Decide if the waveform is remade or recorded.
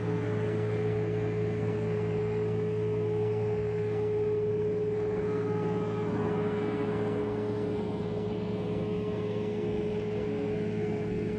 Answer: remade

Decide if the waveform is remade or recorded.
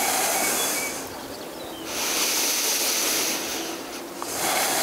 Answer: recorded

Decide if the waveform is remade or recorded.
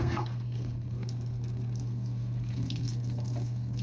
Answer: remade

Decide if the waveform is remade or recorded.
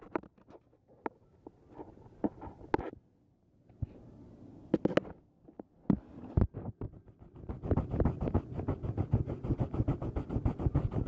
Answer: recorded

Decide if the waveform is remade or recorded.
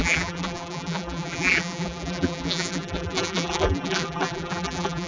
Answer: remade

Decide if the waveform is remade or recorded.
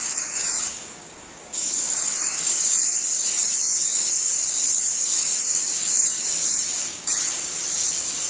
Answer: remade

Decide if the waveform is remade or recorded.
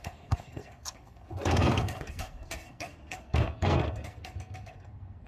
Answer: remade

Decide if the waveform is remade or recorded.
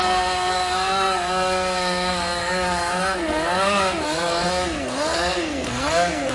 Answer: remade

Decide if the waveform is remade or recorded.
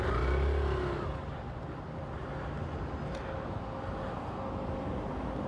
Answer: recorded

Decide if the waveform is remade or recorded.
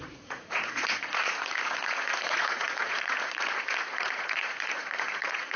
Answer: remade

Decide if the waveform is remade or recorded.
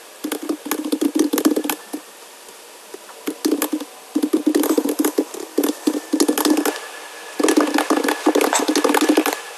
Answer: recorded